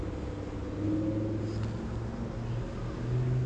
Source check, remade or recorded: recorded